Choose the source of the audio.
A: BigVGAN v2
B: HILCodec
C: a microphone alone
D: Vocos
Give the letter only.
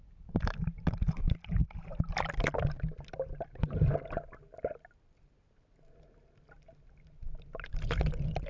C